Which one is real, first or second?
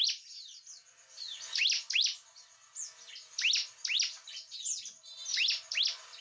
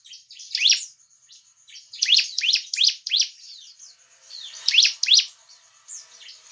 first